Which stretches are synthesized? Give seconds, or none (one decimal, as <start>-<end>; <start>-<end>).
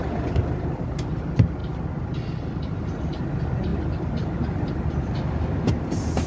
none